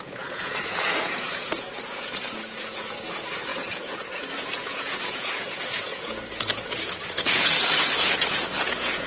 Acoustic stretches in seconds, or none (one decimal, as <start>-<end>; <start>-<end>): none